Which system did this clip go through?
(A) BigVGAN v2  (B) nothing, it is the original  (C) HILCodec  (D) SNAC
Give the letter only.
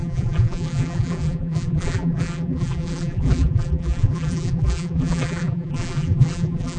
A